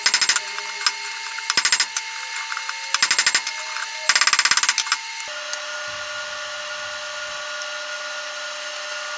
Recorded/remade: recorded